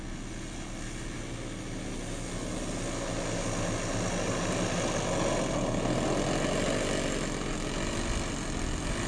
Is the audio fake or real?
real